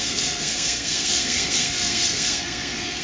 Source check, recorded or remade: remade